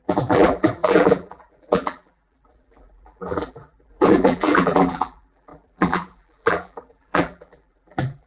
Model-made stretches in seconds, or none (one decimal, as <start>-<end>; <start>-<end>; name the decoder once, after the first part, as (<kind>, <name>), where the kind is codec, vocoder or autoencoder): 0.0-8.3 (vocoder, BigVGAN v2)